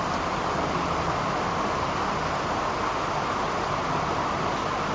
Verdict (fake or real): real